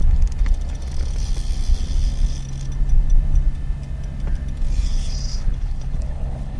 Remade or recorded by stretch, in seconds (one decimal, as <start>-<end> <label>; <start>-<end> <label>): 0.0-5.3 recorded; 5.3-6.6 remade

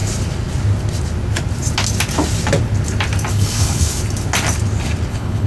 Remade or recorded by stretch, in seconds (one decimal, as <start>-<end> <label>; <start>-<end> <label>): 0.0-3.3 recorded; 3.3-3.9 remade; 3.9-5.1 recorded; 5.1-5.5 remade

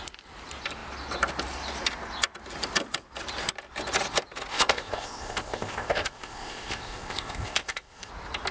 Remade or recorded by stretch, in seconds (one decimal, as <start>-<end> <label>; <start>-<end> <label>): 0.0-4.5 recorded; 4.5-8.1 remade; 8.1-8.5 recorded

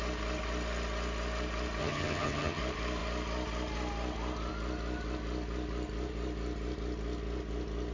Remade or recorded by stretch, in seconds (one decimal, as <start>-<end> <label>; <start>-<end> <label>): 0.0-1.8 recorded; 1.8-2.6 remade; 2.6-7.9 recorded

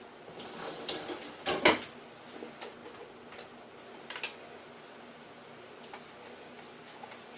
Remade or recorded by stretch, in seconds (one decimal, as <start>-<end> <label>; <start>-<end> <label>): 0.0-7.4 recorded

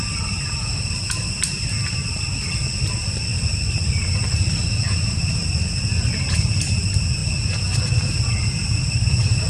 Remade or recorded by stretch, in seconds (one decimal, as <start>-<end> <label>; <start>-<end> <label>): 0.0-9.5 remade

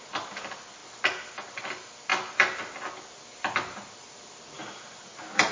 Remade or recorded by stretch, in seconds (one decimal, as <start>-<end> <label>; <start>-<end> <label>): 0.0-5.5 recorded

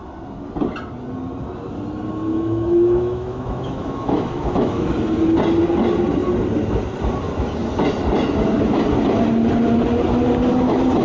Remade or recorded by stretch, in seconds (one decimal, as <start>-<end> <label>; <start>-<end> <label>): 0.0-2.3 recorded; 2.3-4.9 remade; 4.9-11.0 recorded